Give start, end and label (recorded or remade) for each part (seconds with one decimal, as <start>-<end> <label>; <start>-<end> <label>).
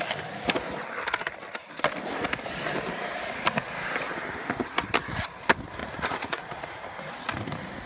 0.0-5.8 recorded; 5.8-6.8 remade; 6.8-7.9 recorded